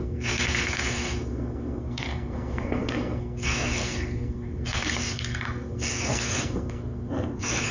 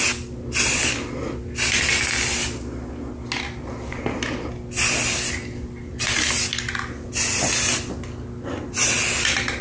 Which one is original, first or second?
second